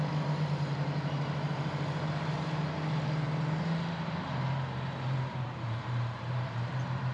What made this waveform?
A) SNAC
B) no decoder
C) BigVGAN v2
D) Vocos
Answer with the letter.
C